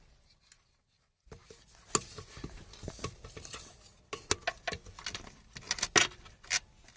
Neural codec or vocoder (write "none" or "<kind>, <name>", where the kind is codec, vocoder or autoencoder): none